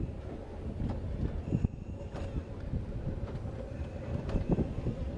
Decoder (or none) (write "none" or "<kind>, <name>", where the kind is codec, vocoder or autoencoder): none